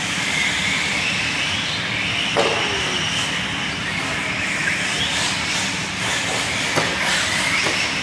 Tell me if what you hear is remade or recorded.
recorded